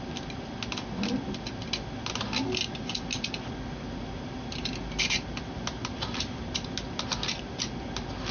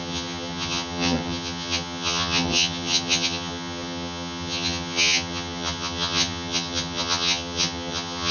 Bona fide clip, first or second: first